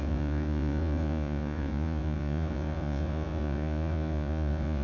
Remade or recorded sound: remade